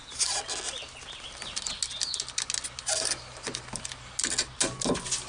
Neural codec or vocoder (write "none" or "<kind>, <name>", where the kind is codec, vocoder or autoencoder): none